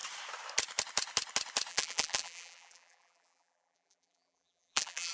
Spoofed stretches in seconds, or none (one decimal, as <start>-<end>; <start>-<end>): 1.7-5.1